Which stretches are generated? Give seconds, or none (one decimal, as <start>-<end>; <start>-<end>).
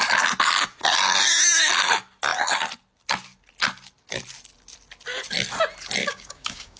6.0-6.8